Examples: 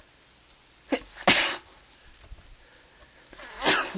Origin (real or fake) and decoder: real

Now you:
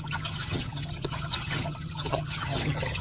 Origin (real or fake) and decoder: fake, vocoder, HiFi-GAN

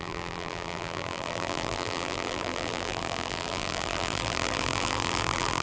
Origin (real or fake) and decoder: fake, vocoder, BigVGAN v2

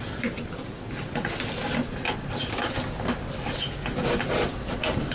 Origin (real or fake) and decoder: real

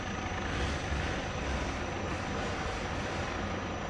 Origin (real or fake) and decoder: real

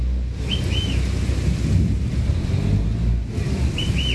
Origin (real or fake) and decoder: real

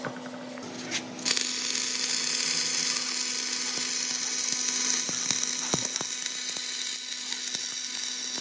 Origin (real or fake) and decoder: real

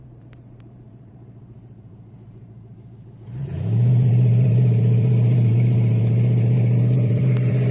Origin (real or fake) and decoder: fake, vocoder, BigVGAN v2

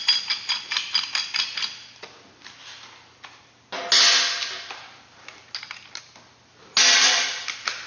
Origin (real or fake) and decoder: real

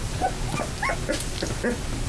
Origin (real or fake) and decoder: real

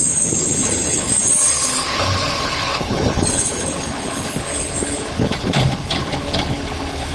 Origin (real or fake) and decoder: fake, codec, HILCodec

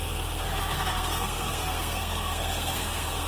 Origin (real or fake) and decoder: fake, codec, SNAC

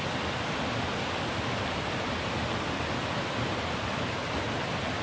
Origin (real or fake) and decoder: real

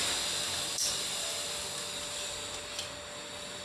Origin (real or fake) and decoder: real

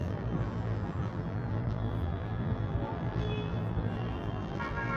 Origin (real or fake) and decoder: fake, vocoder, BigVGAN v2